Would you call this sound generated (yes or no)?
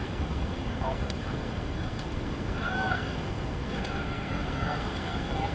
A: yes